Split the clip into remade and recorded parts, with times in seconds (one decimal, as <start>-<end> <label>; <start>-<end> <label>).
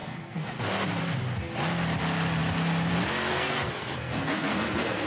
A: 0.0-0.6 remade; 0.6-3.3 recorded; 3.3-5.1 remade